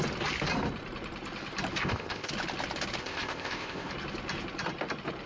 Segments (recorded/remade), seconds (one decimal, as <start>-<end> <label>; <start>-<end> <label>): 0.0-1.8 recorded; 1.8-2.3 remade; 2.3-3.0 recorded; 3.0-3.9 remade; 3.9-5.3 recorded